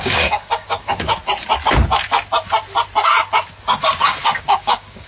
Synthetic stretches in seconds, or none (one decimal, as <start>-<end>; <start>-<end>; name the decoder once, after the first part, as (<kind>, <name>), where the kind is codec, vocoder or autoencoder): 0.0-1.1 (codec, DAC); 4.2-5.1